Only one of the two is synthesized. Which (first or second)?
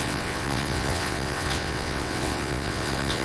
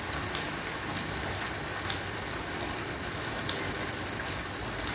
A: first